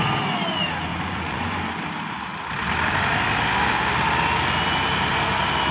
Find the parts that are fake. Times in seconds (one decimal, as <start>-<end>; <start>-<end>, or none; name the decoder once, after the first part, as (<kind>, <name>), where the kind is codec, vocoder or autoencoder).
0.9-1.6 (vocoder, Vocos)